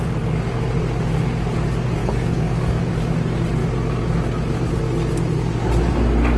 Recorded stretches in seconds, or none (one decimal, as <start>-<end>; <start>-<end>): 0.0-2.0; 2.8-6.4